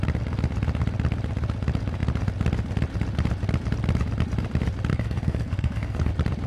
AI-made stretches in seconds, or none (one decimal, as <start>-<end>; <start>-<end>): 4.9-6.1